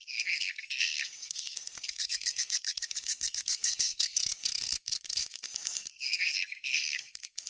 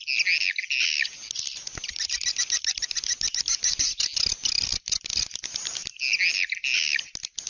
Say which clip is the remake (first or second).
first